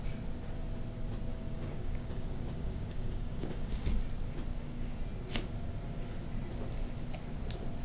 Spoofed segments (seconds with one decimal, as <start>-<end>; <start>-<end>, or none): 1.3-4.0; 4.5-5.0